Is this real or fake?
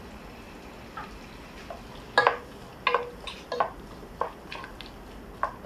real